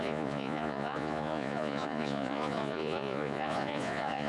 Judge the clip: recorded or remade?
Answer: remade